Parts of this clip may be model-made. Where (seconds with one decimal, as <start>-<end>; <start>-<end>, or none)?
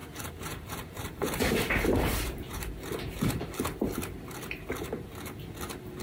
0.0-2.7